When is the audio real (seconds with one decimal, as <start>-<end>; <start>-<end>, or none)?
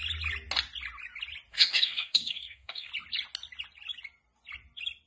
0.0-1.5; 2.9-5.1